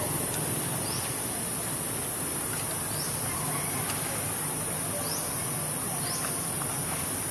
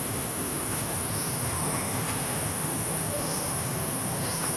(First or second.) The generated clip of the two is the second